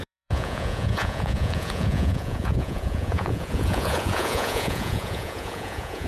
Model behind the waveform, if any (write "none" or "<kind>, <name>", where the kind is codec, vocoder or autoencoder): vocoder, Vocos